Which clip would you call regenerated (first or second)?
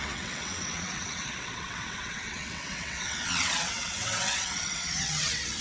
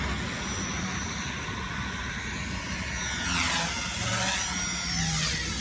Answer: first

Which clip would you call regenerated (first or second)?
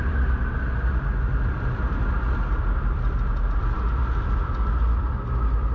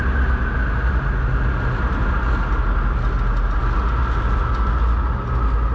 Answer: first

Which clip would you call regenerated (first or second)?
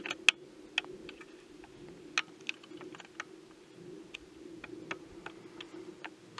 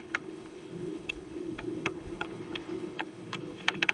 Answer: second